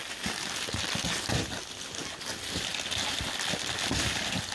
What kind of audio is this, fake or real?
real